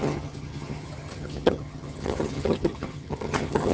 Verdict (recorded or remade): remade